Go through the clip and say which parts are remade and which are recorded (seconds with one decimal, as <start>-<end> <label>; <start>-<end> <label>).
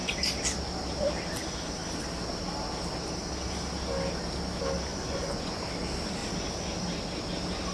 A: 0.0-4.9 recorded; 4.9-5.6 remade; 5.6-7.7 recorded